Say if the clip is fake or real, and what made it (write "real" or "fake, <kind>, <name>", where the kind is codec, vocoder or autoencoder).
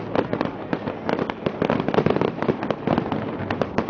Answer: real